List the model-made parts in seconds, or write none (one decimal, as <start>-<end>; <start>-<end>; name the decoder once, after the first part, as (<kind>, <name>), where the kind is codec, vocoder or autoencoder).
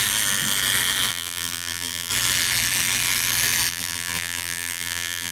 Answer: 1.1-2.1 (vocoder, BigVGAN v2); 3.7-5.3